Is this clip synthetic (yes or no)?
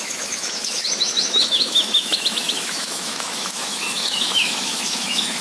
yes